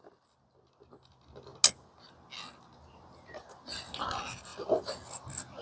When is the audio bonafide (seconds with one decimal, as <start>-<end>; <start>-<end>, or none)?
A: 0.0-5.6